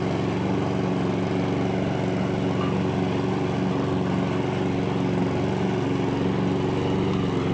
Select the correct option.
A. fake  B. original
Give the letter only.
B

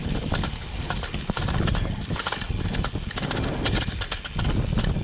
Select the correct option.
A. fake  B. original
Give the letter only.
B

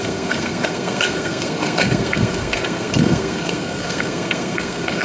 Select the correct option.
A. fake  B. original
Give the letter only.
A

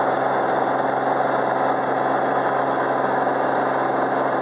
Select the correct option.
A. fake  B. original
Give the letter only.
B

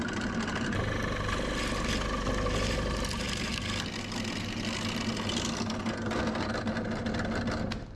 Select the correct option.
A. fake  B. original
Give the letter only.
B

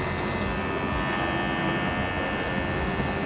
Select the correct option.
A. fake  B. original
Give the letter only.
B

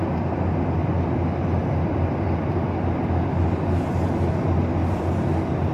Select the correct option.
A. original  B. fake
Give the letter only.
A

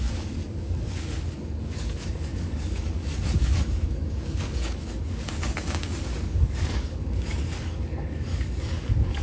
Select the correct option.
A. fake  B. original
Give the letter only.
A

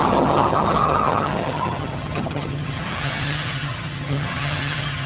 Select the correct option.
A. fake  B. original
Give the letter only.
A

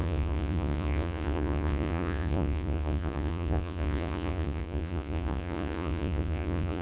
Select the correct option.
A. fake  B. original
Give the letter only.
A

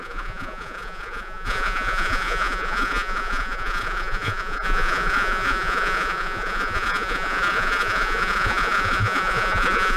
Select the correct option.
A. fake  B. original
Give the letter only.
A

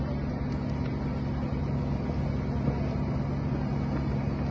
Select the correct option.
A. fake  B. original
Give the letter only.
B